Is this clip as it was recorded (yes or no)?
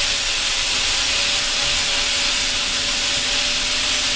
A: yes